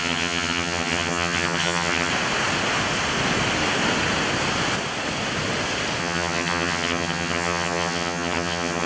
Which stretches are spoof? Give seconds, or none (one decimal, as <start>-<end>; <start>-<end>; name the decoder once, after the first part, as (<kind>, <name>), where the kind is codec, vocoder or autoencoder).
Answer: 0.0-2.1 (vocoder, HiFi-GAN); 6.0-8.9